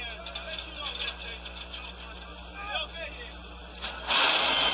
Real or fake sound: real